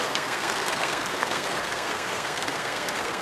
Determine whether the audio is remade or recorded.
remade